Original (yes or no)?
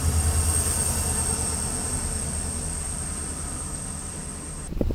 yes